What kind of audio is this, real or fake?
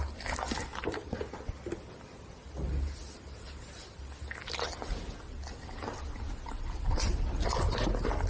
real